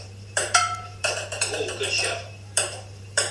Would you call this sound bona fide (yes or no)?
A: no